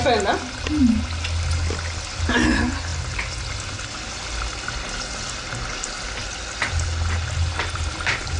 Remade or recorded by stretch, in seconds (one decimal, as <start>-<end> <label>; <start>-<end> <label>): 0.0-8.4 recorded